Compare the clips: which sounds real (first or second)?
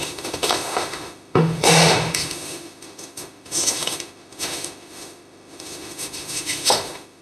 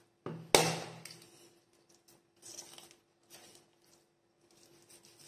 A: second